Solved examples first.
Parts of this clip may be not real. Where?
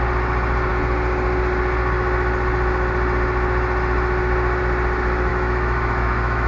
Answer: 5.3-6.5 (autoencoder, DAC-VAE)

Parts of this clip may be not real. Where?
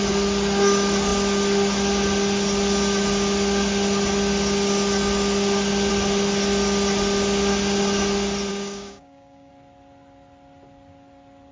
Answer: 8.5-9.5 (codec, DAC)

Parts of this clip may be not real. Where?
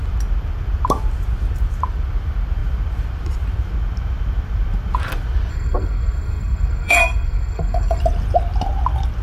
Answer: 5.5-8.0 (codec, SNAC)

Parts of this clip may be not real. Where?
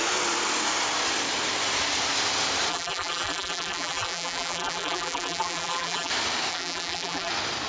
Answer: 2.7-6.1 (vocoder, BigVGAN v2); 6.5-7.3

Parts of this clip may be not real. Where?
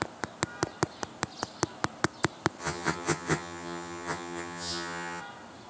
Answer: 2.6-5.2 (vocoder, HiFi-GAN)